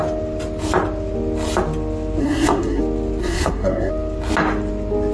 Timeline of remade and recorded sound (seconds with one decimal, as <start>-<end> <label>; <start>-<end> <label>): 0.0-2.2 recorded; 2.2-2.8 remade; 2.8-3.2 recorded; 3.2-3.9 remade; 3.9-5.1 recorded